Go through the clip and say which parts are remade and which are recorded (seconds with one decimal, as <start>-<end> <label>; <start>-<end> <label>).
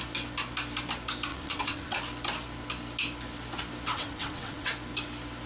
0.0-1.3 recorded; 1.3-2.0 remade; 2.0-3.9 recorded; 3.9-4.7 remade; 4.7-5.5 recorded